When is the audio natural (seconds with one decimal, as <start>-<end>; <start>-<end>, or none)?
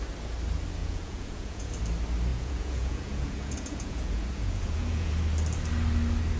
0.0-0.8; 1.7-2.3; 5.1-6.4